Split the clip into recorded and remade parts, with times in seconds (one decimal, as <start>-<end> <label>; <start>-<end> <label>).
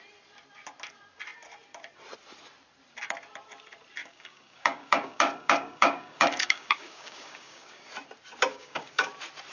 0.0-4.0 recorded; 4.0-7.9 remade; 7.9-8.5 recorded; 8.5-9.1 remade; 9.1-9.5 recorded